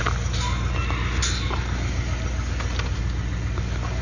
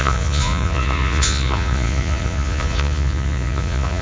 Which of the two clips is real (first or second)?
first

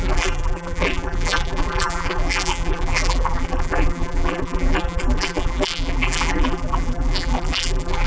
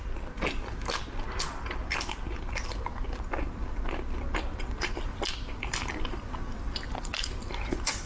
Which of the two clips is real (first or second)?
second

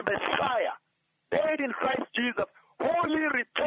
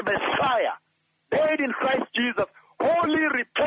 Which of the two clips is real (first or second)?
second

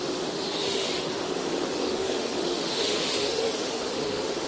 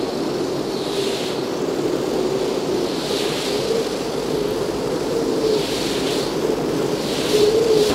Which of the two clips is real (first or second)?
second